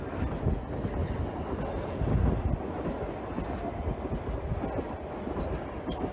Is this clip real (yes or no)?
yes